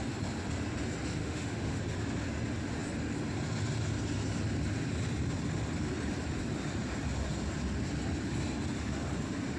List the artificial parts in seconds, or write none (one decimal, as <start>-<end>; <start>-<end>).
1.2-1.8